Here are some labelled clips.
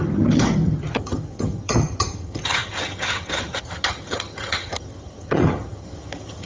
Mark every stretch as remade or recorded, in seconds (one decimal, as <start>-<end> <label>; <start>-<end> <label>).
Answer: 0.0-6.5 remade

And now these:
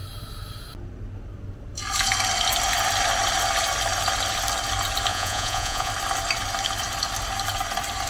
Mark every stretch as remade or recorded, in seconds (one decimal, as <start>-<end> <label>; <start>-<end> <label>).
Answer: 0.0-5.1 recorded; 5.1-5.9 remade; 5.9-8.1 recorded

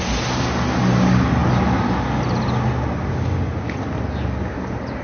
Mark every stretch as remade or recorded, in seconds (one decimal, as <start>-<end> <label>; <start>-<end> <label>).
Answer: 0.0-5.0 recorded

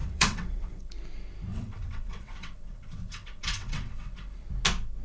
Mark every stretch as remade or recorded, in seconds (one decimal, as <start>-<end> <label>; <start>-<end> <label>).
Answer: 0.0-0.9 remade; 0.9-1.5 recorded; 1.5-4.5 remade; 4.5-5.0 recorded

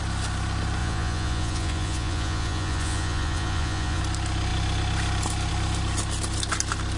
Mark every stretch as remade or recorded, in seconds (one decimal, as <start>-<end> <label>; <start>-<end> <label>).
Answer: 0.0-0.8 recorded; 0.8-4.0 remade; 4.0-7.0 recorded

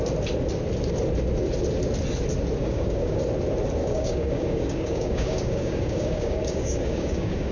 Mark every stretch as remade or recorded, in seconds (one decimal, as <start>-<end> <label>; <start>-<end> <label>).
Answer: 0.0-2.6 recorded; 2.6-3.2 remade; 3.2-3.8 recorded; 3.8-7.5 remade

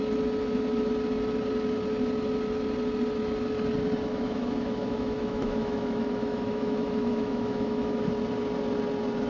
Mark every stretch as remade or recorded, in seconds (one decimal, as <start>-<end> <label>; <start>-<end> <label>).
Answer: 0.0-4.1 recorded; 4.1-8.1 remade; 8.1-9.3 recorded

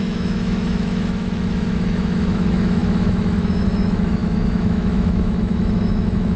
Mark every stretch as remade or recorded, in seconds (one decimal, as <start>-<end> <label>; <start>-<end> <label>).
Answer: 0.0-6.4 remade